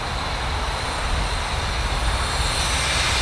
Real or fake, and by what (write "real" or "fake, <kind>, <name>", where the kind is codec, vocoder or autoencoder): real